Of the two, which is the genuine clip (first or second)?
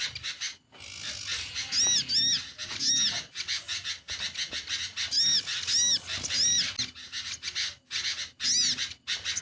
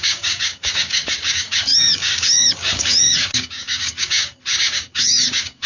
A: first